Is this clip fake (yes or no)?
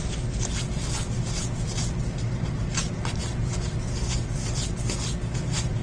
no